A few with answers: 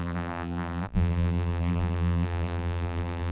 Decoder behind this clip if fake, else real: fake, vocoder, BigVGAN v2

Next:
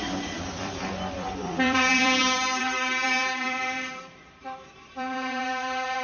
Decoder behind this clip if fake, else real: fake, vocoder, BigVGAN v2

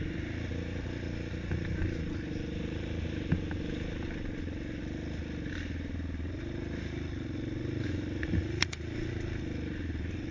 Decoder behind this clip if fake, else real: real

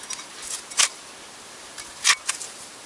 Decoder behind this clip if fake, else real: real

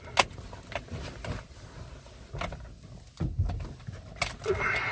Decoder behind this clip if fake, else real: real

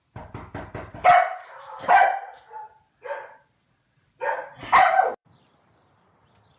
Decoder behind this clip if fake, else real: fake, vocoder, BigVGAN v2